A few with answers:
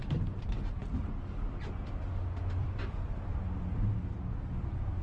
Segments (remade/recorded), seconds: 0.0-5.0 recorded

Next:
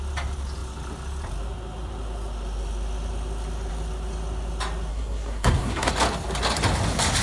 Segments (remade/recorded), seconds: 0.0-4.9 recorded; 4.9-5.9 remade; 5.9-7.2 recorded

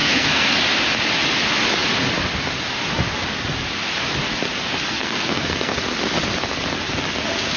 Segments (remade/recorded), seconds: 0.0-0.5 remade; 0.5-4.9 recorded; 4.9-5.8 remade; 5.8-7.6 recorded

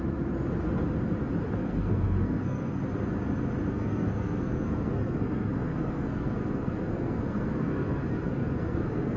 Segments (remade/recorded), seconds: 0.0-1.6 recorded; 1.6-2.8 remade; 2.8-3.7 recorded; 3.7-9.2 remade

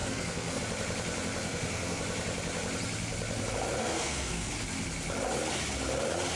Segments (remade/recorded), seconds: 0.0-0.6 remade; 0.6-1.4 recorded; 1.4-2.0 remade; 2.0-3.8 recorded; 3.8-4.5 remade; 4.5-6.4 recorded

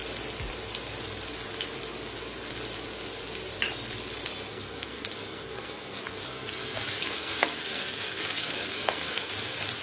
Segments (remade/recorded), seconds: 0.0-4.5 recorded; 4.5-9.3 remade; 9.3-9.8 recorded

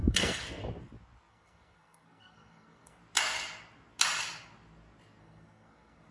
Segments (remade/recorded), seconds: 0.0-0.6 remade; 0.6-1.3 recorded; 1.3-3.0 remade; 3.0-5.2 recorded; 5.2-6.1 remade

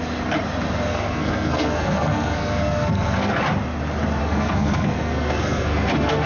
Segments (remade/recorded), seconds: 0.0-0.9 recorded; 0.9-3.4 remade; 3.4-4.2 recorded; 4.2-6.3 remade